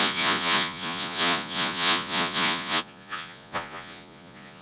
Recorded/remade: remade